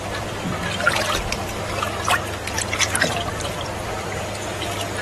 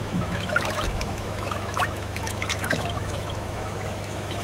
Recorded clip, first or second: first